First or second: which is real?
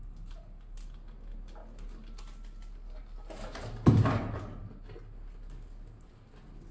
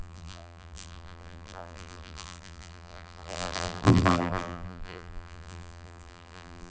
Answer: first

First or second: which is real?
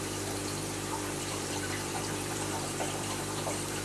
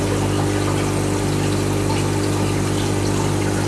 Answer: second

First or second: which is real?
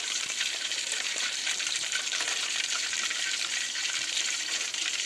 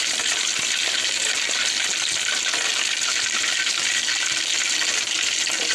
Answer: second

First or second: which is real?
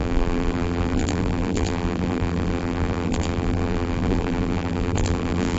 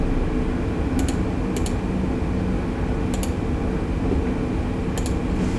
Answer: second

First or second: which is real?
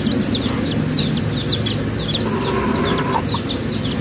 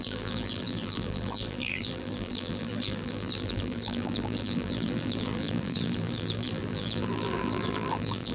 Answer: first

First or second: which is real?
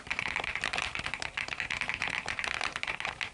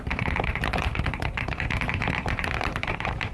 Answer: first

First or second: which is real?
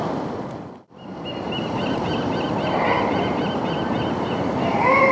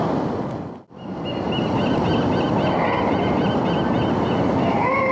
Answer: second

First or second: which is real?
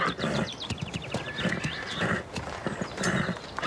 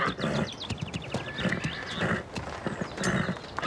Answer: second